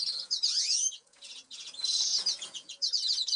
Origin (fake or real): fake